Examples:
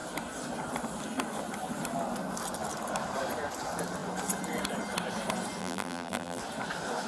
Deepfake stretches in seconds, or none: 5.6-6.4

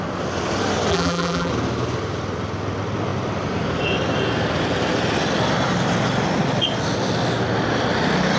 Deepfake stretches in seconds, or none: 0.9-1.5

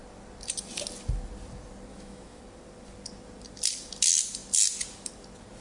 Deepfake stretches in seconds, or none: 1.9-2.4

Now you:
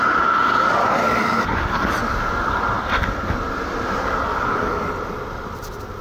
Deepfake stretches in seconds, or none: 0.8-1.9; 4.3-4.9

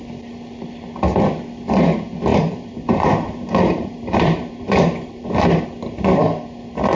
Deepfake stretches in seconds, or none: 2.3-5.6

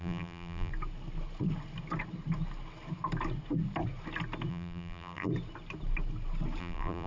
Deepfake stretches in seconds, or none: 0.0-0.7; 4.5-5.3; 6.6-7.1

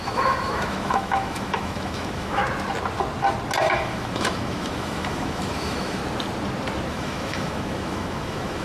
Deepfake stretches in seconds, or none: 0.0-2.4; 3.6-6.0; 6.9-8.6